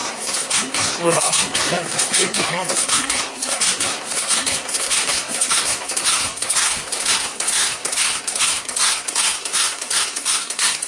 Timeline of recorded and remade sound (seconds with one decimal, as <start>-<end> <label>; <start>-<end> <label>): 0.0-10.9 remade